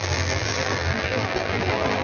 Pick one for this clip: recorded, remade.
remade